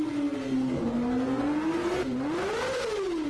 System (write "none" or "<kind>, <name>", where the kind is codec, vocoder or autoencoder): none